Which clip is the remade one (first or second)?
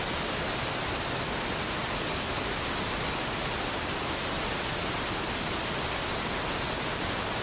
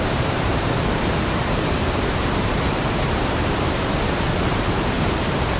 second